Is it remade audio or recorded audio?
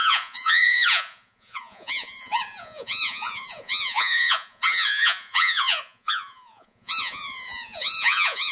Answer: remade